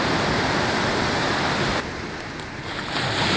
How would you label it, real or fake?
real